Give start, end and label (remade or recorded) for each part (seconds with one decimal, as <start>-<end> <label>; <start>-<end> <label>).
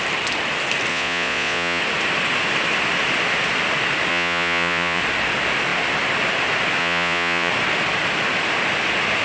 0.0-0.9 recorded; 0.9-1.8 remade; 1.8-4.1 recorded; 4.1-5.0 remade; 5.0-6.8 recorded; 6.8-7.5 remade; 7.5-9.2 recorded